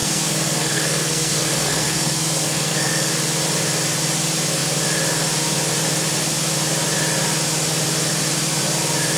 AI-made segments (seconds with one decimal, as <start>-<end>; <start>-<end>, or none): 0.0-3.1